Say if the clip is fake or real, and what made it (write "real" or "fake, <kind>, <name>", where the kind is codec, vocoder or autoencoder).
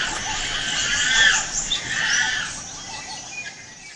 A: real